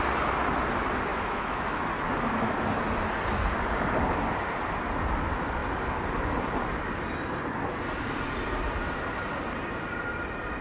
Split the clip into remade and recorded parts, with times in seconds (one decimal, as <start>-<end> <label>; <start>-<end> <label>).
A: 0.0-1.1 recorded; 1.1-1.8 remade; 1.8-10.6 recorded

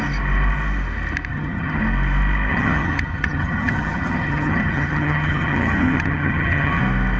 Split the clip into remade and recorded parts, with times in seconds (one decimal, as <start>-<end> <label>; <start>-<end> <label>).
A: 0.0-1.3 recorded; 1.3-1.8 remade; 1.8-2.5 recorded; 2.5-6.8 remade; 6.8-7.2 recorded